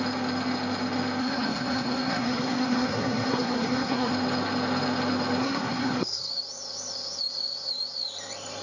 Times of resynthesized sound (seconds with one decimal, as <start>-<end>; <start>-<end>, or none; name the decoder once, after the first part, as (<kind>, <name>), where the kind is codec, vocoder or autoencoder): 1.2-4.1 (codec, SNAC); 5.4-6.3